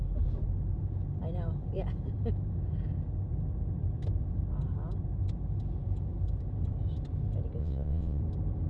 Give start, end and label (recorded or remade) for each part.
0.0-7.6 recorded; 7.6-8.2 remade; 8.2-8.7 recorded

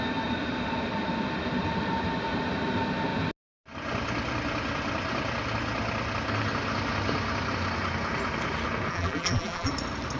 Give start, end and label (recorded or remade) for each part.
0.0-8.9 recorded; 8.9-9.7 remade; 9.7-10.2 recorded

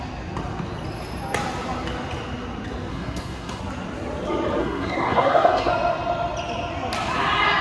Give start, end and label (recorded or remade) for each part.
0.0-2.9 recorded; 2.9-3.6 remade; 3.6-4.6 recorded; 4.6-5.7 remade; 5.7-7.6 recorded